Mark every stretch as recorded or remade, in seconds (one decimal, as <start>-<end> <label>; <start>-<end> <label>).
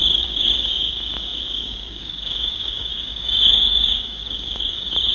0.0-5.1 remade